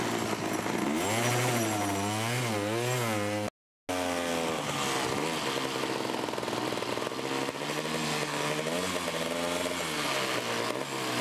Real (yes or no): yes